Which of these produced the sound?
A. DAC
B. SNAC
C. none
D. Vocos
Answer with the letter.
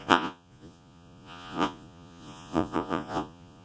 D